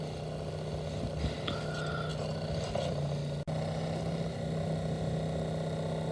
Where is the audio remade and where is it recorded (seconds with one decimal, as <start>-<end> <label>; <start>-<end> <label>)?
0.0-6.1 recorded